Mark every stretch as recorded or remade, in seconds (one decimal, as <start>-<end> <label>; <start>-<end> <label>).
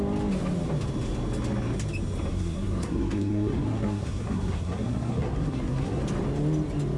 0.0-2.3 recorded; 2.3-6.0 remade; 6.0-7.0 recorded